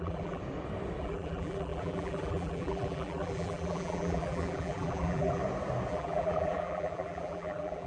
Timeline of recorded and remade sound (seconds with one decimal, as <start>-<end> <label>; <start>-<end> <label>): 0.0-0.4 remade; 0.4-1.0 recorded; 1.0-5.4 remade; 5.4-5.9 recorded; 5.9-7.9 remade